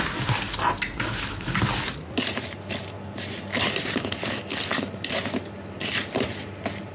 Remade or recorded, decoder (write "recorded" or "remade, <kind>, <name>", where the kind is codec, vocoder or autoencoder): recorded